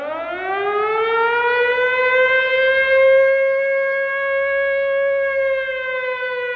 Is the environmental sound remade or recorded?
recorded